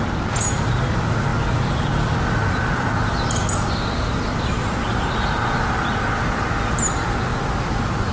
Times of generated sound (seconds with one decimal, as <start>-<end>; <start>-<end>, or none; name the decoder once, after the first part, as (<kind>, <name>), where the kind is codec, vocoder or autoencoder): none